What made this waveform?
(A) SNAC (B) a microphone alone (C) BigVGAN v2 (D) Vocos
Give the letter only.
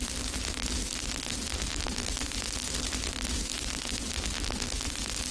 B